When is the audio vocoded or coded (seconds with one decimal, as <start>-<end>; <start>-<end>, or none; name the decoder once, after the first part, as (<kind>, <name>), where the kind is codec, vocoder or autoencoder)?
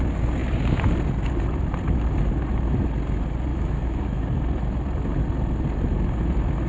3.5-4.2 (autoencoder, DAC-VAE)